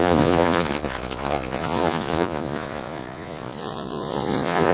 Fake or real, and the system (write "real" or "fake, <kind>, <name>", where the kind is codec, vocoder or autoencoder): fake, vocoder, Vocos